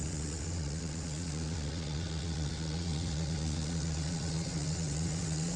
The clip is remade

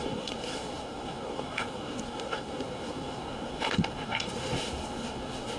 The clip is remade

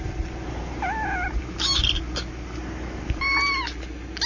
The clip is recorded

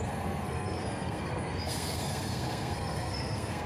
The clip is remade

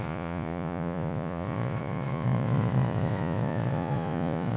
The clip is remade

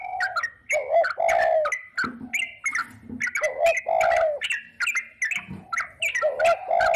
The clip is recorded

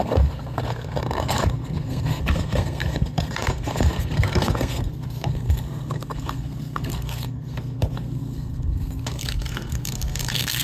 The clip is remade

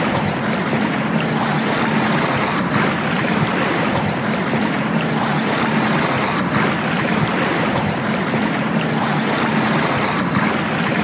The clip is recorded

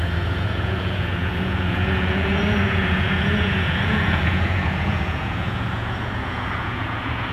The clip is remade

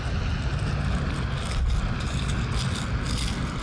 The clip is recorded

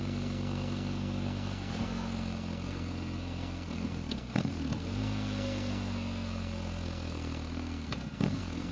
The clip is remade